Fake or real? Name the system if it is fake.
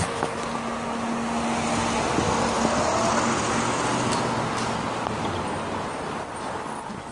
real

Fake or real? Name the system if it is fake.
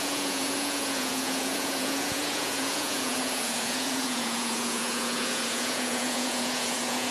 fake, vocoder, Vocos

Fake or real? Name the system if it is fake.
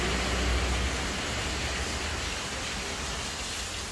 real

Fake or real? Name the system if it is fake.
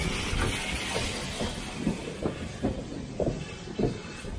real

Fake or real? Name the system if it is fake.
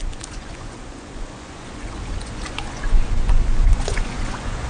fake, vocoder, Vocos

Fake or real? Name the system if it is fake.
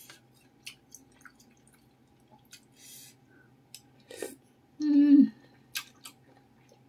real